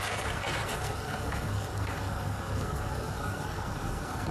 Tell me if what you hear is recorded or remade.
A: remade